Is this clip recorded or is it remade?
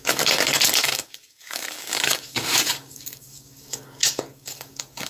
remade